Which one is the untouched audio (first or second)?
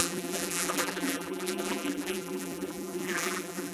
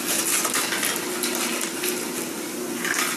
second